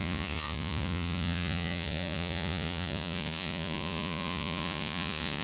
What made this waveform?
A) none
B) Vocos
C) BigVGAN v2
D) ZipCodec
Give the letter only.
B